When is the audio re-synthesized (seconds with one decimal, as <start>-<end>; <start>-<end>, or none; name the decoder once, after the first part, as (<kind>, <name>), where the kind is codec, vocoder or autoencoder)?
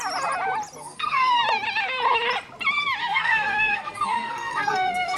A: 0.8-1.4 (codec, SNAC); 3.0-5.2